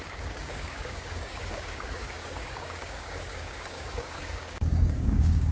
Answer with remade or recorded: remade